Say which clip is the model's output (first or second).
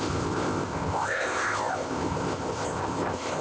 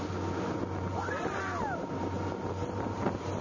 first